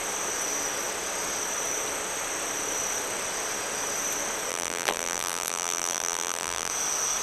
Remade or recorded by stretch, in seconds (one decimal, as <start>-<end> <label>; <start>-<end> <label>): 0.0-4.5 recorded; 4.5-6.7 remade; 6.7-7.2 recorded